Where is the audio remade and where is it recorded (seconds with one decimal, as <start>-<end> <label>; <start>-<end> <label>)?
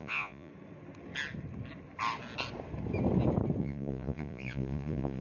0.0-0.5 remade; 0.5-3.6 recorded; 3.6-5.2 remade